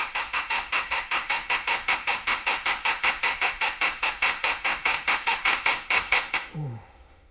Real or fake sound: fake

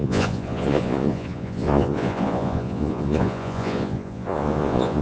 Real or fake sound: fake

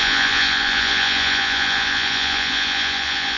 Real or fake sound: fake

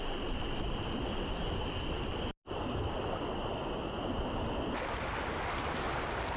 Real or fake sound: real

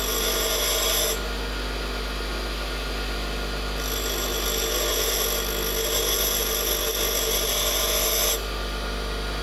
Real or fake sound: real